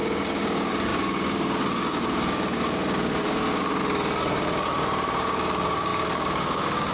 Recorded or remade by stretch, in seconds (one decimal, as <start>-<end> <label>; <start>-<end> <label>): 0.0-3.8 remade; 3.8-4.3 recorded; 4.3-6.9 remade